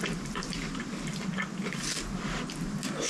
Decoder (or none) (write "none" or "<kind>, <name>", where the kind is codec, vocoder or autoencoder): none